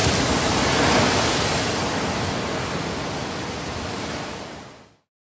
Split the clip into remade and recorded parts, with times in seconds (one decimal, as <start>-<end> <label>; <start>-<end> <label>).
0.0-5.3 recorded